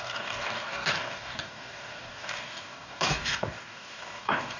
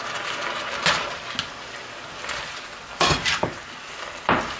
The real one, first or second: second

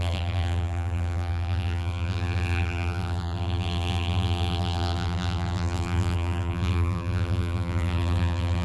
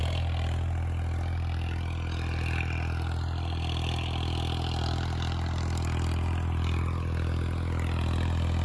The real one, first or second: second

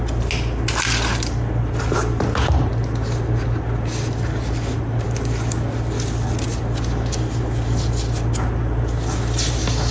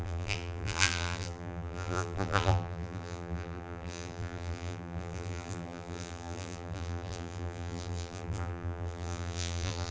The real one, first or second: first